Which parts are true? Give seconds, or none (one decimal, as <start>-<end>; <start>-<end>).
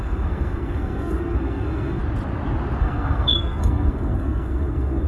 2.0-2.8